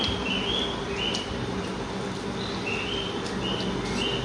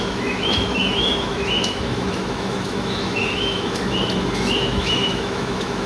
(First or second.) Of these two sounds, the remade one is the second